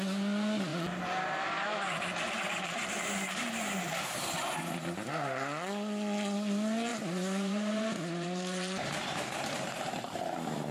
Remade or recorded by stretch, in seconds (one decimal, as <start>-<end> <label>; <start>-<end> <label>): 0.0-0.7 recorded; 0.7-3.9 remade; 3.9-6.9 recorded; 6.9-10.0 remade; 10.0-10.7 recorded